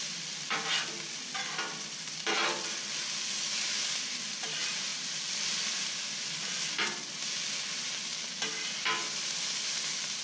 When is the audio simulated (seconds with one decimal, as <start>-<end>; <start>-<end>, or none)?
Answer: 0.0-10.2